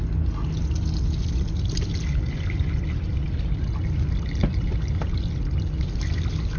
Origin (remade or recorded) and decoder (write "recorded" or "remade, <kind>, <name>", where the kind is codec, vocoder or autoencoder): recorded